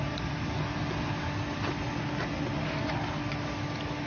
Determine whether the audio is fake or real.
real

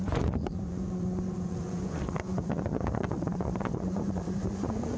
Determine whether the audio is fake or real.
fake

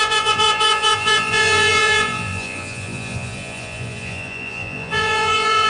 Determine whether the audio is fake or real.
fake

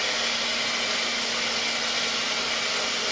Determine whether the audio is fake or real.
real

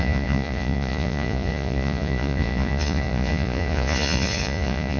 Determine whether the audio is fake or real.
fake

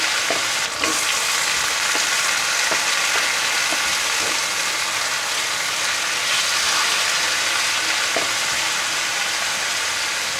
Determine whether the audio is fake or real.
real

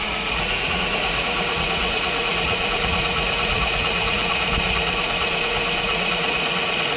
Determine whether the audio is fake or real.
fake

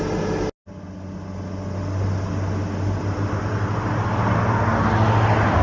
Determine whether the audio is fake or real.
real